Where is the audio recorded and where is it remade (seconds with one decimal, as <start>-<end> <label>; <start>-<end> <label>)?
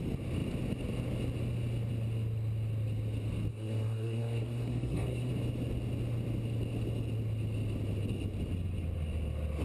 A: 0.0-3.5 recorded; 3.5-5.3 remade; 5.3-9.6 recorded